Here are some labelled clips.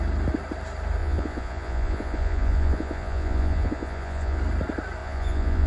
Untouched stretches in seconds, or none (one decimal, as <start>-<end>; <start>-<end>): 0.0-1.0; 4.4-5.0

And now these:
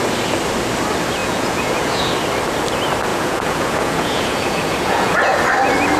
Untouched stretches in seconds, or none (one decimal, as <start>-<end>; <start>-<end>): 0.0-1.2; 2.1-3.1; 5.4-6.0

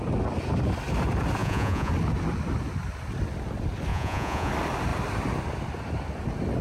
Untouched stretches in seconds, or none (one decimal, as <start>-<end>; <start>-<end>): 0.0-1.4; 1.9-3.9; 4.5-6.6